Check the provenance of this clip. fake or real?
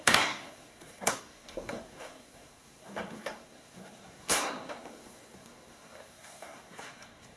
fake